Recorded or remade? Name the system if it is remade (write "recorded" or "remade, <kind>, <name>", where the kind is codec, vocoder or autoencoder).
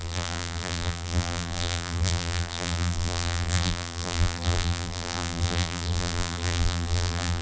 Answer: remade, vocoder, BigVGAN v2